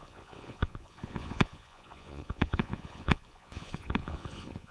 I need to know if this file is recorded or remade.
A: remade